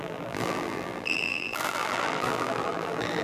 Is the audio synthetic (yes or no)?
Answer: yes